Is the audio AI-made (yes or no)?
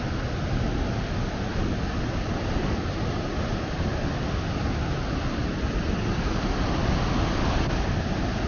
no